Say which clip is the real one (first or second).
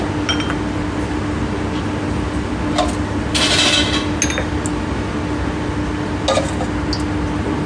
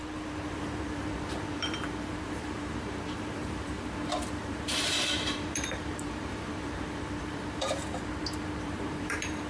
first